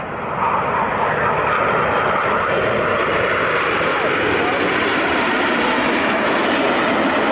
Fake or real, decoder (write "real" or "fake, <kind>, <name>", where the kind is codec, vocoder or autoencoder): real